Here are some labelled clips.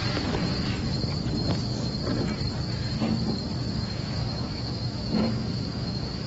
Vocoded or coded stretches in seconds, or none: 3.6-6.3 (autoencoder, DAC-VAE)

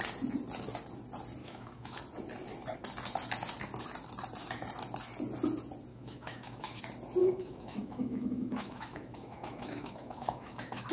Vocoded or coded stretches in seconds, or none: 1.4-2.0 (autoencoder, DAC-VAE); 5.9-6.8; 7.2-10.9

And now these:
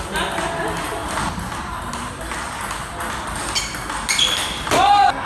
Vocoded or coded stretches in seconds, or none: none

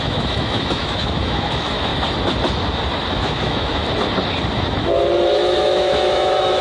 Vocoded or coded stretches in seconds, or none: 0.0-1.9 (autoencoder, DAC-VAE); 3.1-3.8; 5.6-6.6

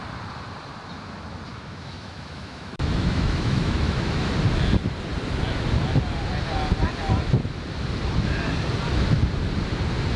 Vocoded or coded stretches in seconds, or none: 1.5-4.3 (autoencoder, DAC-VAE)

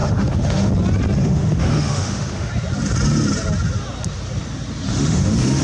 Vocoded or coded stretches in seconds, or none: 0.0-0.7 (autoencoder, DAC-VAE); 1.2-2.5; 4.9-5.6

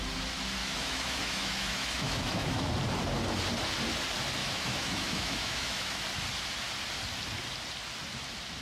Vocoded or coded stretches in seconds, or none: 0.6-2.7 (autoencoder, DAC-VAE); 4.4-6.0